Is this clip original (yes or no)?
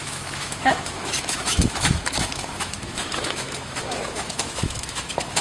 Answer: no